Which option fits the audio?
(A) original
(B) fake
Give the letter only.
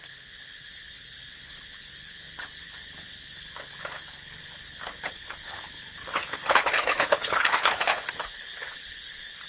B